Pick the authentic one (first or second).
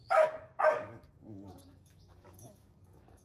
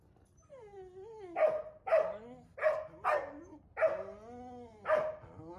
second